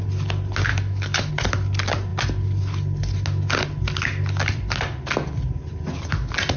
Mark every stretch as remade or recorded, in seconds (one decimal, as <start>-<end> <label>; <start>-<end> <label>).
0.0-0.7 recorded; 0.7-1.3 remade; 1.3-6.6 recorded